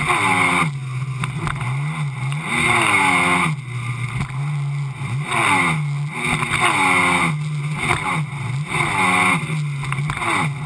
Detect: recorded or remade recorded